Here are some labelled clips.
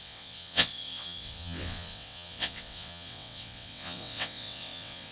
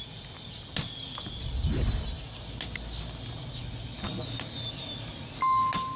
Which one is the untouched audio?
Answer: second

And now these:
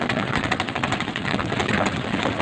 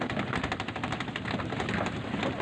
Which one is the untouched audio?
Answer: second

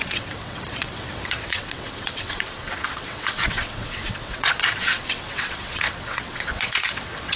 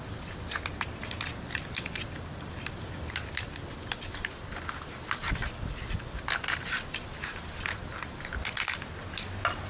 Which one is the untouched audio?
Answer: second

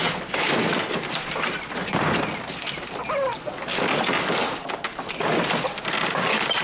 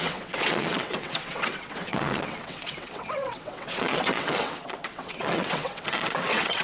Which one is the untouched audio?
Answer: first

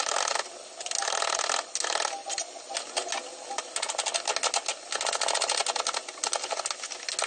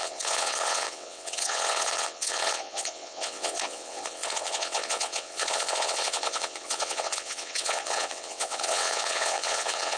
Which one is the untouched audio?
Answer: first